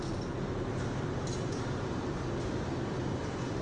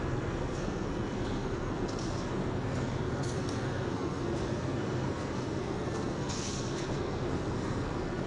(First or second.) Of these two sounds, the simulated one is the second